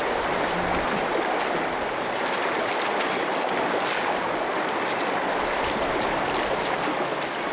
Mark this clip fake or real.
real